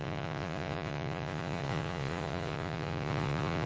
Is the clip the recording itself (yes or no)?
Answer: no